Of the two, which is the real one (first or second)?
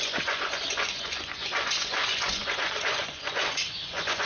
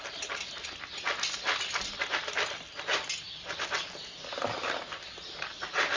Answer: second